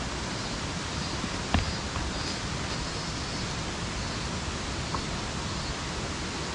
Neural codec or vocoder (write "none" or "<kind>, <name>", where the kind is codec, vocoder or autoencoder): none